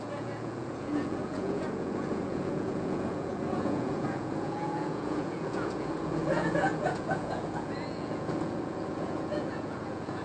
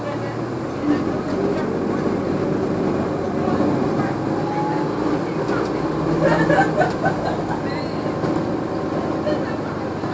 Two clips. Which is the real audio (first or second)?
second